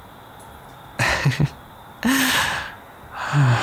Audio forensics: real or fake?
real